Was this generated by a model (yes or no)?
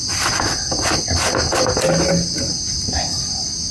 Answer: no